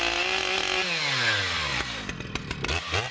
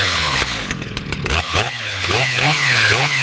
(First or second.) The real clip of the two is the first